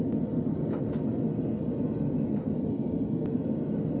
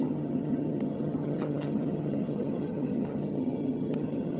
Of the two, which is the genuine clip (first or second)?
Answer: first